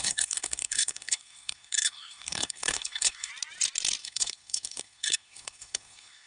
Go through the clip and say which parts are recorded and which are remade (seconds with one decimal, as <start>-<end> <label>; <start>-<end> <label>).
0.0-3.3 remade; 3.3-4.0 recorded; 4.0-6.3 remade